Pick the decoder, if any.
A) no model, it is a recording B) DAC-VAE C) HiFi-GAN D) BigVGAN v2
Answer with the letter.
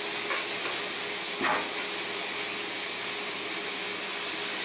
A